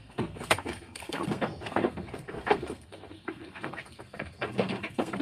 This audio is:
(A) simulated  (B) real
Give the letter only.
A